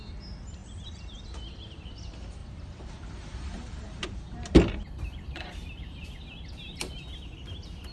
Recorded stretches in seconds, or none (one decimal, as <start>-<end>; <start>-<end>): 0.0-0.6; 1.2-2.4; 6.2-7.9